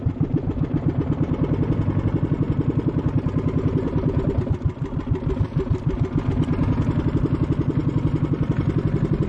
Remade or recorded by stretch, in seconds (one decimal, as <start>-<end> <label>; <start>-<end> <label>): 0.0-9.3 recorded